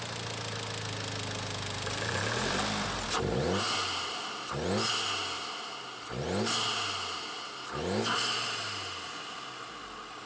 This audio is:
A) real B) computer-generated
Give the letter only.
A